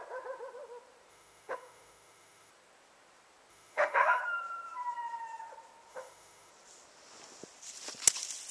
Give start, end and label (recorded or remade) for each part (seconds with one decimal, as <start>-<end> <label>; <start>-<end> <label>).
0.0-1.1 recorded; 1.1-2.5 remade; 2.5-3.5 recorded; 3.5-4.2 remade; 4.2-5.9 recorded; 5.9-6.5 remade; 6.5-8.5 recorded